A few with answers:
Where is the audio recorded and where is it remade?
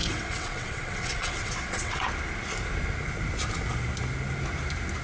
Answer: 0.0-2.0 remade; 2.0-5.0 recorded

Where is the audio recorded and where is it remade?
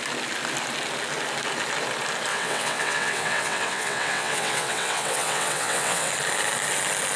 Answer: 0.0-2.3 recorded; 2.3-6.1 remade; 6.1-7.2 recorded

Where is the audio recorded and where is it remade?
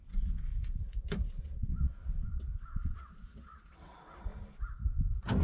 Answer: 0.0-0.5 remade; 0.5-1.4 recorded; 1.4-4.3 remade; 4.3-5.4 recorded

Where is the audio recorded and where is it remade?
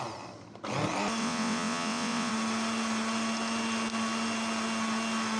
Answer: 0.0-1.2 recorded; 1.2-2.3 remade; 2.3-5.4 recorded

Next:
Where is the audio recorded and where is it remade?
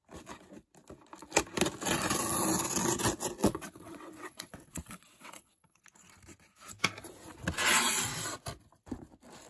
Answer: 0.0-3.4 recorded; 3.4-5.8 remade; 5.8-9.5 recorded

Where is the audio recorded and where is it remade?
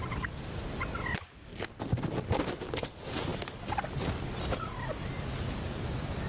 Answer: 0.0-6.3 recorded